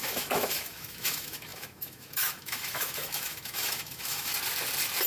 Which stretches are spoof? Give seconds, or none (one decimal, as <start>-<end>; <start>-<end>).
0.0-4.3